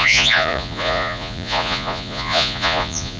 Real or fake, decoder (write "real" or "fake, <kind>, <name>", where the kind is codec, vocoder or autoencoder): fake, vocoder, Vocos